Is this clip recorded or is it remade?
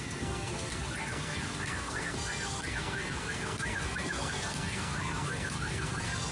remade